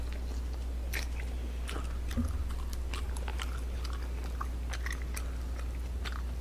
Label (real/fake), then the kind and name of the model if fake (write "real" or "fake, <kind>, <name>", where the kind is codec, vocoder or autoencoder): real